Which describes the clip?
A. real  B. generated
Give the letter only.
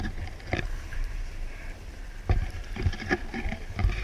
B